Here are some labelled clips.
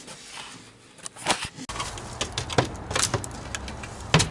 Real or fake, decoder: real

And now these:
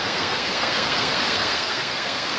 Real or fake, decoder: fake, codec, SNAC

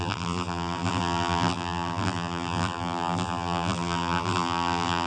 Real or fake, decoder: fake, vocoder, BigVGAN v2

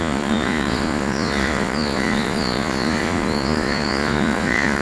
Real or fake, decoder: fake, vocoder, Vocos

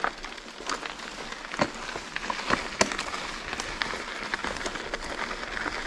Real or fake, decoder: real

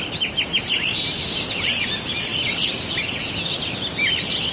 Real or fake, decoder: real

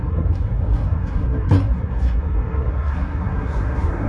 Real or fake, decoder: fake, codec, SNAC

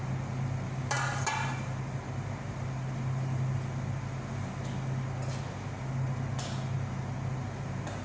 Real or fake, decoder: real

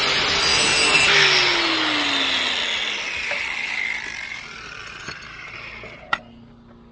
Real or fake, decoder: real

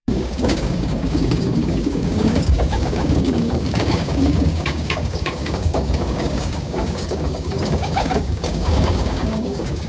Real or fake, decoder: fake, codec, DAC